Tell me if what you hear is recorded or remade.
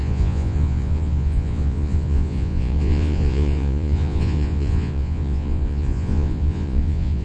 remade